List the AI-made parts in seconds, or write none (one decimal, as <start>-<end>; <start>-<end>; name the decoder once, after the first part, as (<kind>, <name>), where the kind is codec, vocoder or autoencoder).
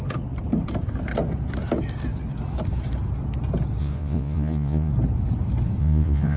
3.8-4.9 (vocoder, Vocos); 5.8-6.4